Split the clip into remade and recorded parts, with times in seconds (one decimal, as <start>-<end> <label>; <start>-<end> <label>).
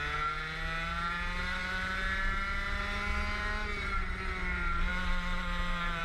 0.0-6.0 recorded